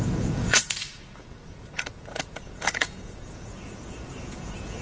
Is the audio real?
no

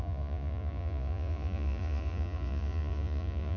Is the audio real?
no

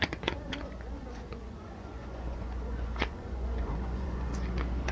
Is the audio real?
no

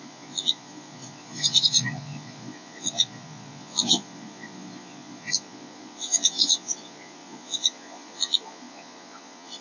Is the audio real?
no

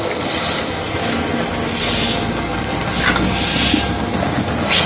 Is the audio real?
yes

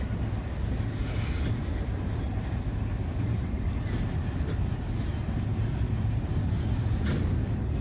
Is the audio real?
yes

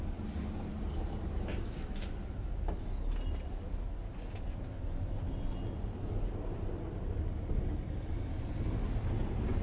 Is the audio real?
yes